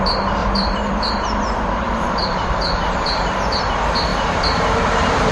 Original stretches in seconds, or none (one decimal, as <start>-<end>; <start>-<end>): 0.0-0.4; 3.6-4.1